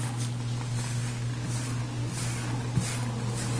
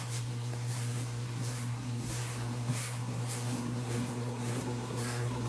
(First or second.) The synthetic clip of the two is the second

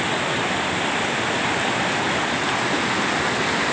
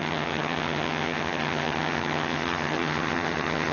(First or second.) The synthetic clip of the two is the second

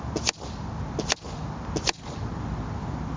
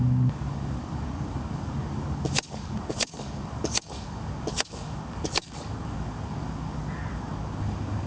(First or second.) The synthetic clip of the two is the second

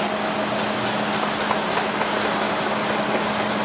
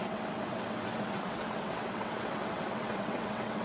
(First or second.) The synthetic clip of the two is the second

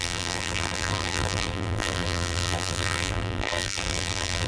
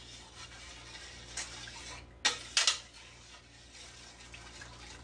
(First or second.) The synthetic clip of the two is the first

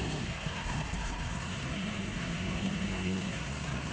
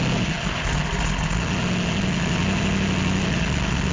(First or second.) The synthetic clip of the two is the first